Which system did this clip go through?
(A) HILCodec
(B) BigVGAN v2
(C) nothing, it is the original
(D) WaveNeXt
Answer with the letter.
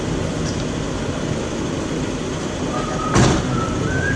C